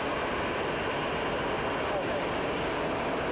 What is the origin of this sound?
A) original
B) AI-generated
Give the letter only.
A